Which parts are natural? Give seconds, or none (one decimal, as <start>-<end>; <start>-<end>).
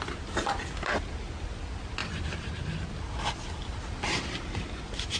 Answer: 0.0-5.2